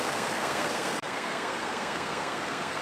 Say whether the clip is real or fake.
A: fake